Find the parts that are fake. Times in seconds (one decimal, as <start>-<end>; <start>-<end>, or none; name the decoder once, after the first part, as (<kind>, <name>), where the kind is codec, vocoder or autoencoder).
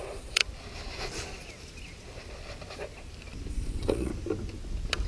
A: 0.0-0.4 (vocoder, Vocos); 3.5-4.1